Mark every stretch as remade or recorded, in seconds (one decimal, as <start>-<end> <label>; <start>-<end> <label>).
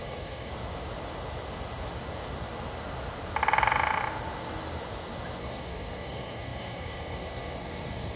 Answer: 0.0-0.5 remade; 0.5-5.4 recorded; 5.4-8.2 remade